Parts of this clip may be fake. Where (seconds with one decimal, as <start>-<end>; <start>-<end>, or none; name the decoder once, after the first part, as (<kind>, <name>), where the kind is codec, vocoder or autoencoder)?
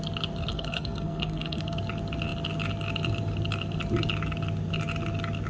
0.5-1.8 (codec, SNAC)